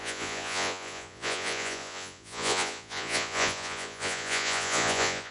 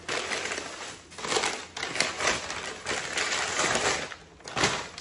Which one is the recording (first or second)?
second